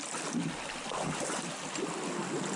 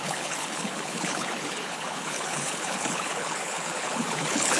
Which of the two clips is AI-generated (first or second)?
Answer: second